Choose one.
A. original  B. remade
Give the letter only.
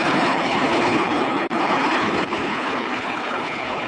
B